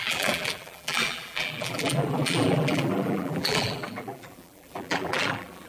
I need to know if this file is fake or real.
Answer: fake